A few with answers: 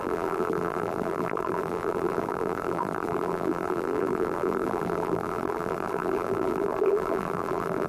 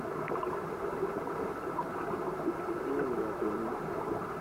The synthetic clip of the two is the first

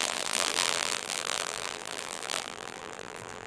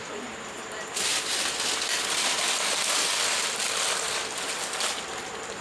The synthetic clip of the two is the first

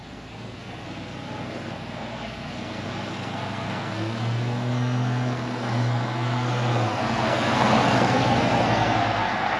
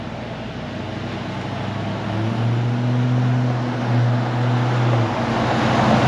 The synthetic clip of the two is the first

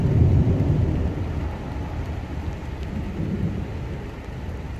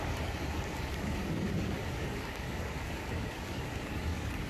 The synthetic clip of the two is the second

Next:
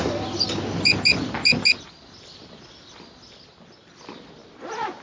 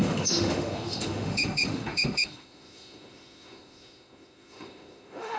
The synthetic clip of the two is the second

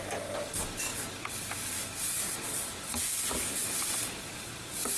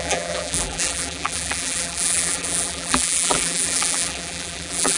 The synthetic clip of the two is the second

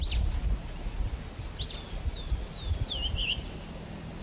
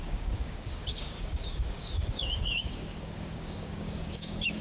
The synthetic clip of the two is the second